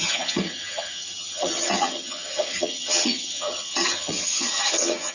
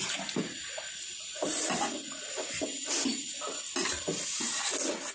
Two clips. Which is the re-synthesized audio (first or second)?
first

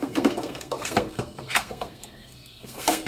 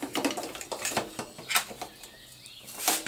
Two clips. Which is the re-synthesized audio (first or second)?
first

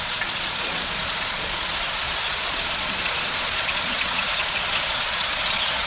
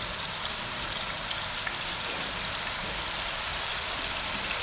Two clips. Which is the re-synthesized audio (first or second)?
first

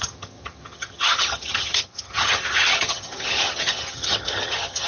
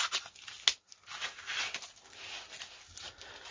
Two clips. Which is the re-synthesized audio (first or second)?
first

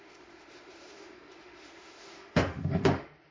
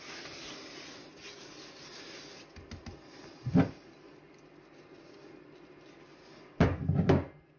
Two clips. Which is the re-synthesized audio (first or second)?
first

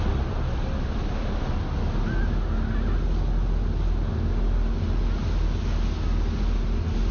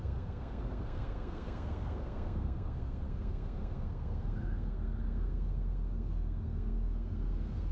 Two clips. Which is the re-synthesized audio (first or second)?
second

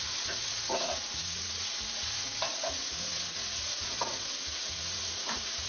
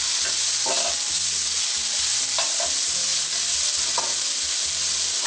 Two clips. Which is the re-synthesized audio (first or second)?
first